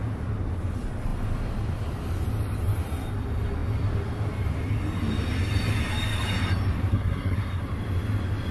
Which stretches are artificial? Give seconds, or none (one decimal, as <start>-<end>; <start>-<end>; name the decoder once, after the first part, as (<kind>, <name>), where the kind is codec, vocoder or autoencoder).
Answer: 6.9-7.6 (codec, SNAC)